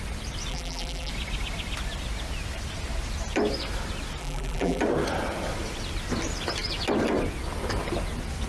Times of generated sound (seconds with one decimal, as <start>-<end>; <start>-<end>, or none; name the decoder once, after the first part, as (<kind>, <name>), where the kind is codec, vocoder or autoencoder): 0.5-1.1 (vocoder, BigVGAN v2); 4.2-4.8